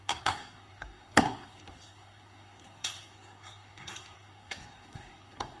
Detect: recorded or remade remade